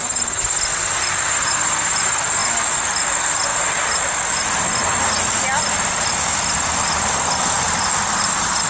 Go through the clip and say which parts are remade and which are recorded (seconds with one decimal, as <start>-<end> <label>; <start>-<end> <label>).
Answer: 0.0-8.7 recorded